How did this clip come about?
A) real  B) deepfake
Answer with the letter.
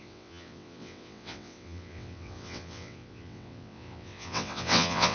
B